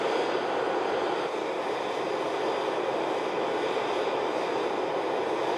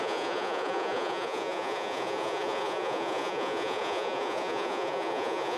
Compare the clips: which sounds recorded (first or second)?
first